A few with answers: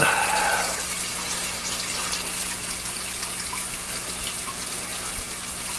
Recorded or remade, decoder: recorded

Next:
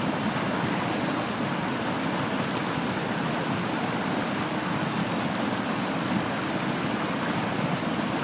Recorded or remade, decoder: recorded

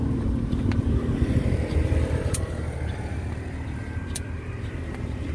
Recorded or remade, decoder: remade, vocoder, BigVGAN v2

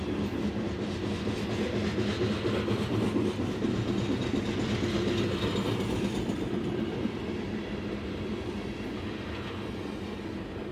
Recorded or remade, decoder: recorded